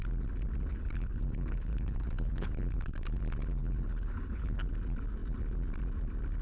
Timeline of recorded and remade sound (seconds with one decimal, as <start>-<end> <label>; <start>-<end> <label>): 0.0-0.7 recorded; 0.7-3.2 remade; 3.2-3.6 recorded; 3.6-4.7 remade; 4.7-6.4 recorded